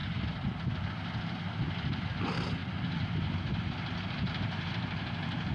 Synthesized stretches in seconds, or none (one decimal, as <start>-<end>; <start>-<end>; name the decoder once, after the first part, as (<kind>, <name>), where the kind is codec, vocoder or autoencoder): none